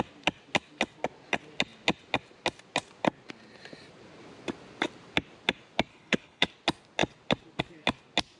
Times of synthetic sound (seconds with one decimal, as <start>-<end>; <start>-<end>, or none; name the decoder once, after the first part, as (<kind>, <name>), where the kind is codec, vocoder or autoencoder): 5.9-6.5 (codec, HILCodec)